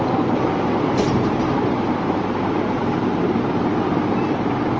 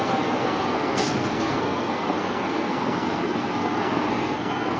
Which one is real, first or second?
first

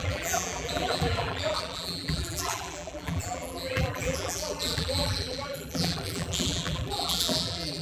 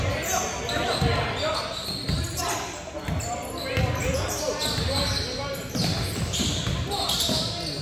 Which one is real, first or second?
second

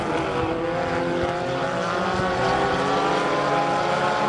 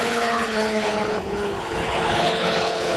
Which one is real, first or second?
first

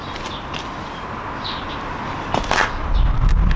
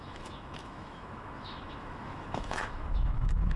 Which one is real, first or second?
first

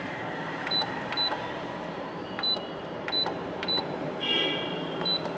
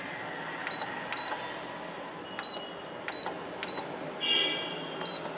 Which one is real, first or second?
second